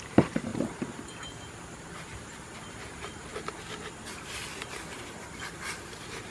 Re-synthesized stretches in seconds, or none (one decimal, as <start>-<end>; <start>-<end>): 0.0-0.5; 1.6-3.3; 4.1-6.3